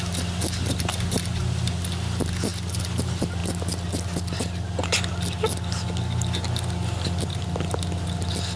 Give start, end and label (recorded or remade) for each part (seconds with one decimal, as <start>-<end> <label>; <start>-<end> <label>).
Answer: 0.0-8.6 recorded